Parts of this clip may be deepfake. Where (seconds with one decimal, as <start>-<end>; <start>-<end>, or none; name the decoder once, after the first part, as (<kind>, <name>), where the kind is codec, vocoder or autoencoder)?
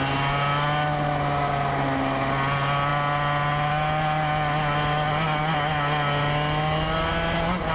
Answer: none